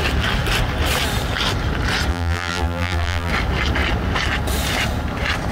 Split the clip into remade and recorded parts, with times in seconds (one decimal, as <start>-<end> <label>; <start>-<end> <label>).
0.0-2.1 recorded; 2.1-3.3 remade; 3.3-5.5 recorded